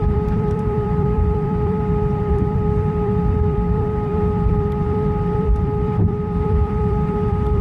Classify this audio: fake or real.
fake